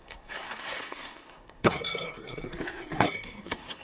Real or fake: fake